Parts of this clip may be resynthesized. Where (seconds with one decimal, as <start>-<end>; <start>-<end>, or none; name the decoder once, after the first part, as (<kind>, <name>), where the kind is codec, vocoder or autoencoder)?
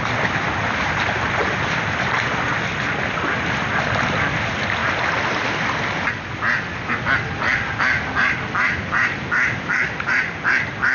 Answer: none